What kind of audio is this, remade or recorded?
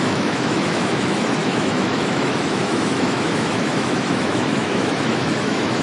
remade